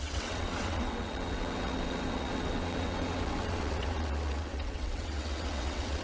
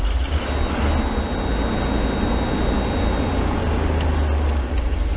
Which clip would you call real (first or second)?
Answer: second